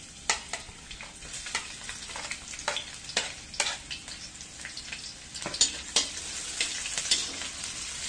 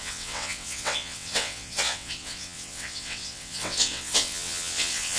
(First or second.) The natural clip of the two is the first